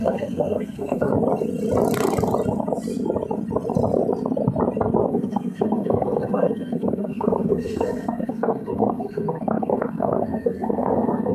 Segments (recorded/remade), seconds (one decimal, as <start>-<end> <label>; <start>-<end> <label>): 0.0-1.1 remade; 1.1-5.1 recorded; 5.1-11.3 remade